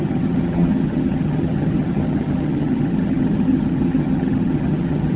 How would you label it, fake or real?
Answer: fake